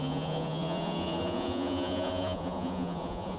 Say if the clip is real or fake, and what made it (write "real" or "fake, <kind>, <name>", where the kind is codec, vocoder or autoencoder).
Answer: fake, vocoder, Vocos